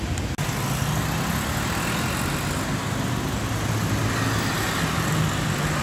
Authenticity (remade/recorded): recorded